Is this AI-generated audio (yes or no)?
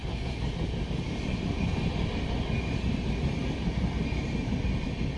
no